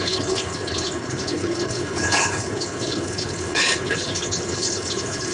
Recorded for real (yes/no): no